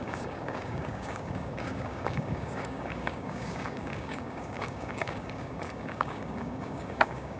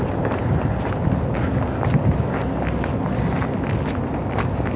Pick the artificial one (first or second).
first